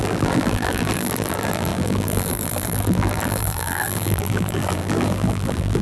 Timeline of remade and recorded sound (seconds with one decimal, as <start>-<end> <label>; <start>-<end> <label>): 0.0-5.8 remade